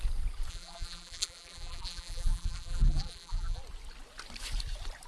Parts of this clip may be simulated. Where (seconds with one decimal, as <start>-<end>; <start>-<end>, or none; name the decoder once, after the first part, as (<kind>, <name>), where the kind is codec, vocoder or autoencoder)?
0.5-3.6 (vocoder, BigVGAN v2)